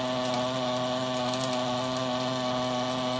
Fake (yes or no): no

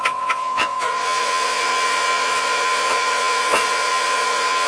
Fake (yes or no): yes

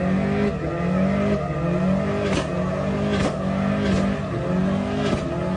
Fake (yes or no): no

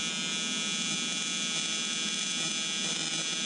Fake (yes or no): no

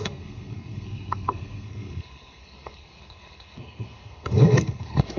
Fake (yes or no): yes